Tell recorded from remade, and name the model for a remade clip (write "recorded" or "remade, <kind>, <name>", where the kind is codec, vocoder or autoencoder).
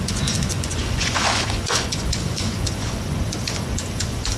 remade, vocoder, Vocos